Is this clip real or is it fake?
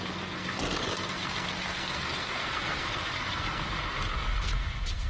fake